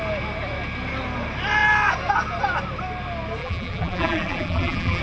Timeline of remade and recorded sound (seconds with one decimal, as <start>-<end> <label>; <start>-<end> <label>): 0.0-3.4 recorded; 3.4-5.0 remade